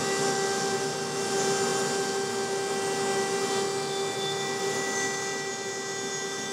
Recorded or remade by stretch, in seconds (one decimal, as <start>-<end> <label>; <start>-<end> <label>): 0.0-6.5 recorded